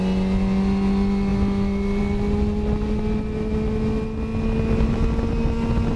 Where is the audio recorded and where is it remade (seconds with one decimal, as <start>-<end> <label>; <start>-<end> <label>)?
0.0-6.0 recorded